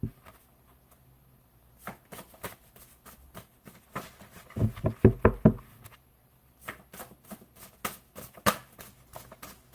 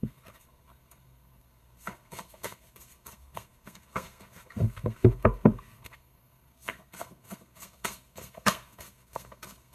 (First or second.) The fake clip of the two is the second